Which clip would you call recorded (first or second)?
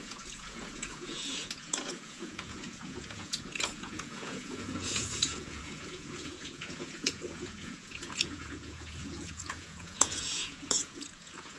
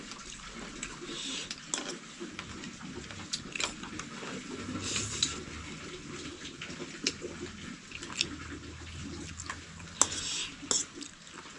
second